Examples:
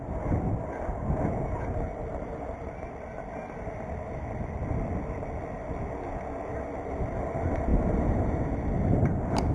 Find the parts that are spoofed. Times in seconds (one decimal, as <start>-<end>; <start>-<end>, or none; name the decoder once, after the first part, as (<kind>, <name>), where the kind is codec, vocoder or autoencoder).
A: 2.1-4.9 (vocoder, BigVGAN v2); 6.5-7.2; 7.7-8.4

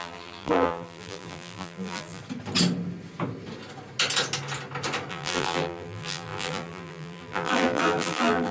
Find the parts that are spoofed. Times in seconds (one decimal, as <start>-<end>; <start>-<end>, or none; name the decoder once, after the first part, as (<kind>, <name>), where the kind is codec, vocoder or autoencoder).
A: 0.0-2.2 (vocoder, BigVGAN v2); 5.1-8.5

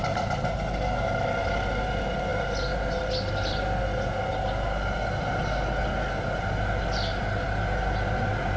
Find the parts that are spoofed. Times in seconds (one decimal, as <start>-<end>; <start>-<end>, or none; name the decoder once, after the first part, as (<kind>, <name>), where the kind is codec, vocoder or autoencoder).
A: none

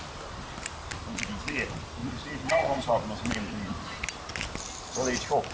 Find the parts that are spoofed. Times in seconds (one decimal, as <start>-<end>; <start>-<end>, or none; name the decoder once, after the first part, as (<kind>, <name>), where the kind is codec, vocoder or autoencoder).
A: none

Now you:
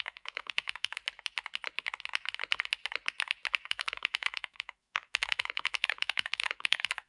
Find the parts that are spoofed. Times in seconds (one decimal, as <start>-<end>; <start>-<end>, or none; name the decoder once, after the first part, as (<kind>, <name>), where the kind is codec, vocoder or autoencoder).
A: 0.0-1.0 (autoencoder, DAC-VAE); 3.7-7.1

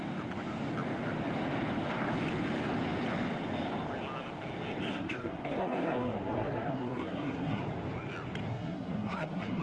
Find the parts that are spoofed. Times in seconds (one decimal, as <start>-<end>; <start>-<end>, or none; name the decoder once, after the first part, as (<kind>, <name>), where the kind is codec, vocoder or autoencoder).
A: 4.9-7.6 (codec, SNAC); 8.5-9.6